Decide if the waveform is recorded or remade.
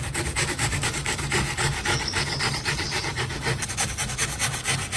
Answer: remade